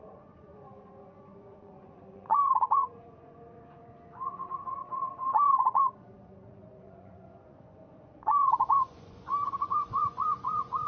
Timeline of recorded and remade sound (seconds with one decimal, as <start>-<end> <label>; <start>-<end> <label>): 0.0-10.9 remade

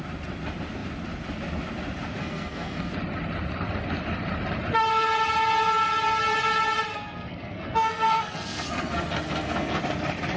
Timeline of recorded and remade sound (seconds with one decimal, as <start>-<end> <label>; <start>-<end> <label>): 0.0-2.2 recorded; 2.2-2.9 remade; 2.9-6.9 recorded; 6.9-9.8 remade; 9.8-10.4 recorded

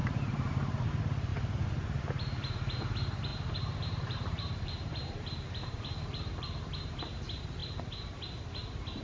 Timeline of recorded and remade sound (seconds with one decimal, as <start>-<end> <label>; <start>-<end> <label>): 0.0-0.9 remade; 0.9-1.3 recorded; 1.3-2.0 remade; 2.0-3.3 recorded; 3.3-6.9 remade; 6.9-9.0 recorded

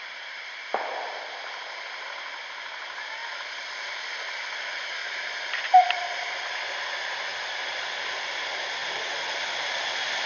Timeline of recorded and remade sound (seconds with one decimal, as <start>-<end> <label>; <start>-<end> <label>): 0.0-10.3 recorded

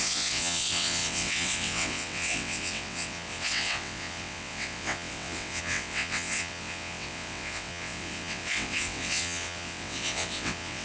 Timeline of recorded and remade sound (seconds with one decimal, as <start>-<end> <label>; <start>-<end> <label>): 0.0-10.8 remade